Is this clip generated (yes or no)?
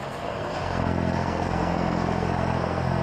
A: yes